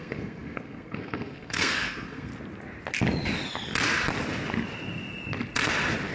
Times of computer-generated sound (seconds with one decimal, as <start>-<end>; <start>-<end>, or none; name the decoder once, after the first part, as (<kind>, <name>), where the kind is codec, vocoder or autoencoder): 0.0-2.3 (codec, SNAC)